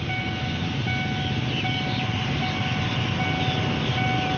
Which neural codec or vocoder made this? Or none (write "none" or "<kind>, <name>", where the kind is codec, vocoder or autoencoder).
none